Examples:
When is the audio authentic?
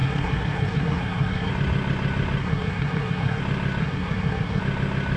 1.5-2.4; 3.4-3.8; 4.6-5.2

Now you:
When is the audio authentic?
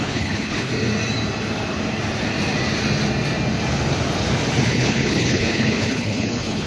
0.7-4.7